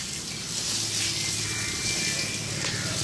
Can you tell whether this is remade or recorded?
recorded